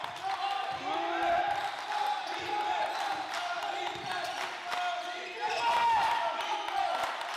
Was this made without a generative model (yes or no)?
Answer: yes